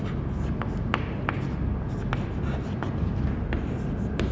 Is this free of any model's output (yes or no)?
yes